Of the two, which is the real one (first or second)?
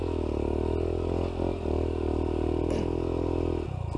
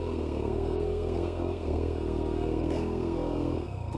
first